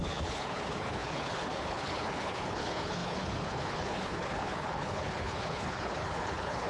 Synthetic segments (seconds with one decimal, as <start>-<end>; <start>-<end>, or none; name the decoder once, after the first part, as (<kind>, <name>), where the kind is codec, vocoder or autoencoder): 0.0-6.7 (codec, HILCodec)